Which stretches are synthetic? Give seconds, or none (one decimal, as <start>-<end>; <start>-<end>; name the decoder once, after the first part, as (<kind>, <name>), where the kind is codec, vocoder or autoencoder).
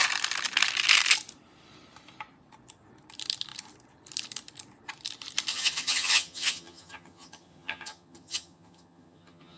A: 5.5-9.6 (vocoder, HiFi-GAN)